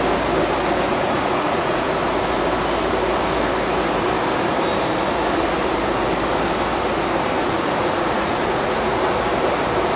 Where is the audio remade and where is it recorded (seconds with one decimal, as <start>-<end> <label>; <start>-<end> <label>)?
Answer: 0.0-0.9 recorded; 0.9-1.9 remade; 1.9-7.4 recorded; 7.4-9.0 remade; 9.0-10.0 recorded